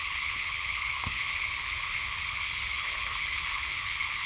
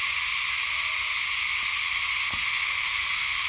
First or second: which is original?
second